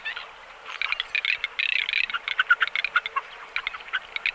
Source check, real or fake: real